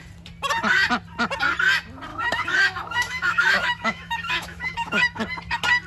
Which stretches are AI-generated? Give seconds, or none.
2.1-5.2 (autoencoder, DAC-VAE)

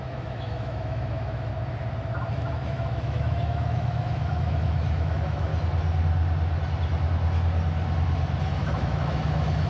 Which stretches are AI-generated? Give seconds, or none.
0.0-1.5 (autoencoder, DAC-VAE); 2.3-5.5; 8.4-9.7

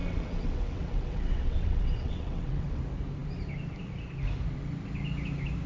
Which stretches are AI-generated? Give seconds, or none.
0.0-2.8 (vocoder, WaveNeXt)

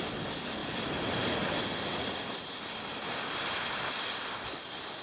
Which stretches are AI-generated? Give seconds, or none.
none